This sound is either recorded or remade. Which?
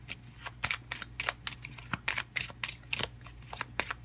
recorded